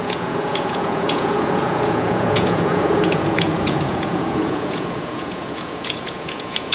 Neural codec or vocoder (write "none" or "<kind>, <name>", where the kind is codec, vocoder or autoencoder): vocoder, Vocos